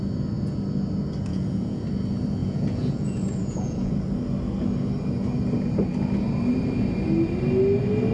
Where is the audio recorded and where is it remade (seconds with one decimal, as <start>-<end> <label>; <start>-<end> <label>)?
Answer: 0.0-1.3 recorded; 1.3-1.8 remade; 1.8-2.4 recorded; 2.4-3.9 remade; 3.9-8.1 recorded